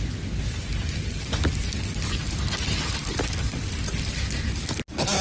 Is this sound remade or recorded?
recorded